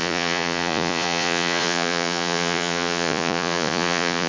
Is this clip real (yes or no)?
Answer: no